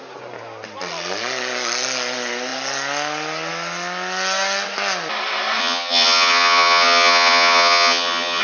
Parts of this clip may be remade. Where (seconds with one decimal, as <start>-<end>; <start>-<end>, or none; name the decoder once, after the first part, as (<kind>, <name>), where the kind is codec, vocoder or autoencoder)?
5.6-8.4 (vocoder, HiFi-GAN)